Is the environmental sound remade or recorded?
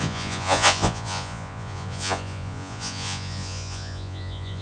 remade